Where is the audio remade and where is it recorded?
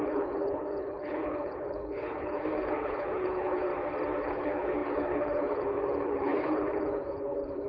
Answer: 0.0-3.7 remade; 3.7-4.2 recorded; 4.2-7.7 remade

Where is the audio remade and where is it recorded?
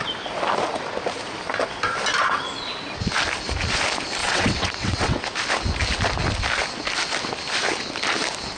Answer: 0.0-4.2 recorded; 4.2-5.2 remade; 5.2-8.6 recorded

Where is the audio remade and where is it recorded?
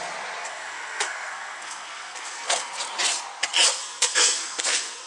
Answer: 0.0-0.4 recorded; 0.4-2.7 remade; 2.7-3.8 recorded; 3.8-5.1 remade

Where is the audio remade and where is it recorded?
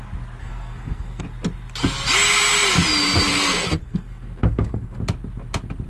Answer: 0.0-0.4 recorded; 0.4-1.2 remade; 1.2-3.3 recorded; 3.3-5.0 remade; 5.0-5.9 recorded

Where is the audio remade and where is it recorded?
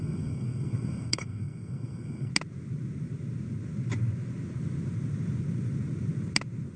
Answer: 0.0-2.3 remade; 2.3-6.8 recorded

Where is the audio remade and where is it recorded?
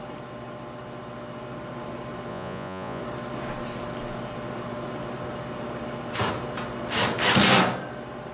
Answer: 0.0-2.3 recorded; 2.3-3.0 remade; 3.0-8.3 recorded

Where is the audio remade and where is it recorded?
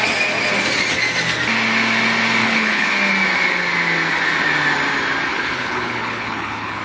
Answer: 0.0-2.4 recorded; 2.4-2.9 remade; 2.9-5.3 recorded; 5.3-6.8 remade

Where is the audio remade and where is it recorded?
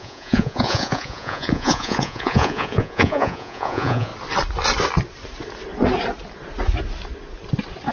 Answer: 0.0-4.1 remade; 4.1-7.9 recorded